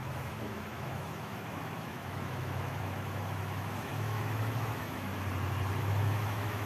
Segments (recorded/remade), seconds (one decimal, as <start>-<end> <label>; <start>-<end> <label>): 0.0-5.1 remade; 5.1-5.8 recorded; 5.8-6.7 remade

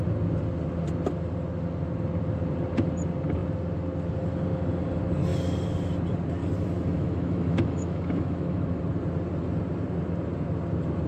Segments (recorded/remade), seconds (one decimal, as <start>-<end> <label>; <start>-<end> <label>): 0.0-6.4 recorded; 6.4-8.8 remade; 8.8-11.1 recorded

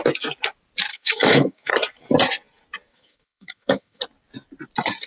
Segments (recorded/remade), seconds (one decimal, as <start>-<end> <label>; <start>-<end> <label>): 0.0-0.9 recorded; 0.9-1.7 remade; 1.7-2.9 recorded; 2.9-4.0 remade; 4.0-5.1 recorded

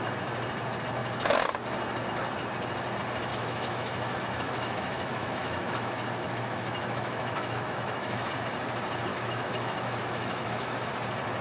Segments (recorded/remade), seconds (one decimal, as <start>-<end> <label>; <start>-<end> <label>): 0.0-3.3 recorded; 3.3-8.3 remade; 8.3-9.1 recorded; 9.1-10.9 remade; 10.9-11.4 recorded

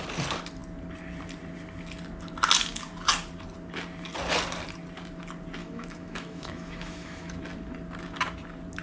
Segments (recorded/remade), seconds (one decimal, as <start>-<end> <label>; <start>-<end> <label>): 0.0-5.6 recorded; 5.6-7.3 remade; 7.3-8.8 recorded

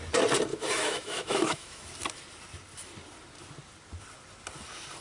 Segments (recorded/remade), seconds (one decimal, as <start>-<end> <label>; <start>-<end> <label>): 0.0-0.5 recorded; 0.5-1.9 remade; 1.9-5.0 recorded